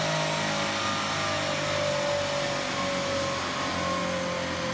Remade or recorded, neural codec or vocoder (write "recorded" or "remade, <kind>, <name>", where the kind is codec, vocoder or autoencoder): recorded